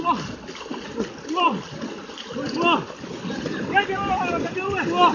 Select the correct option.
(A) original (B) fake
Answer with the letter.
A